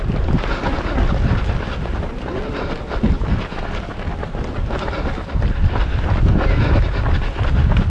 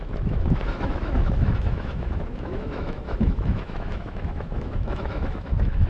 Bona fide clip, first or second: first